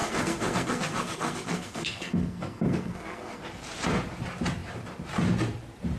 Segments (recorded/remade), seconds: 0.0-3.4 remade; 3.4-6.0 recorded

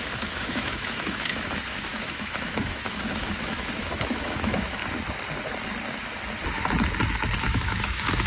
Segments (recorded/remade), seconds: 0.0-4.8 remade; 4.8-7.4 recorded; 7.4-8.3 remade

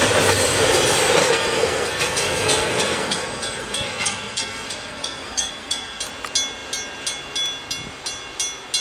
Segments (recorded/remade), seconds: 0.0-1.2 recorded; 1.2-6.0 remade; 6.0-8.8 recorded

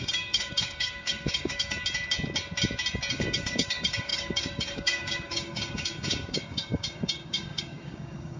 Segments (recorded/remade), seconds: 0.0-1.8 remade; 1.8-3.1 recorded; 3.1-8.4 remade

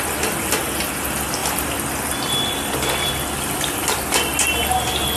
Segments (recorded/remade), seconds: 0.0-5.2 recorded

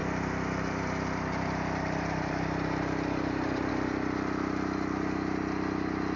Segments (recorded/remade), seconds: 0.0-3.7 remade; 3.7-6.2 recorded

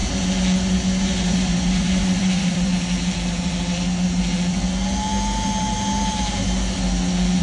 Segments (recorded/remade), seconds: 0.0-1.0 recorded; 1.0-2.7 remade; 2.7-7.4 recorded

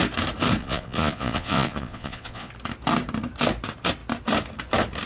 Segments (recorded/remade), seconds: 0.0-0.6 recorded; 0.6-2.5 remade; 2.5-5.1 recorded